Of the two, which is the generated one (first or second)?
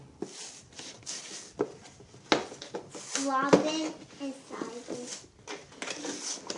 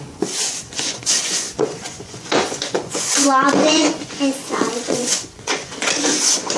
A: second